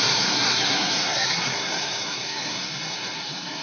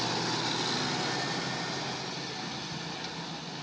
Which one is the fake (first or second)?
first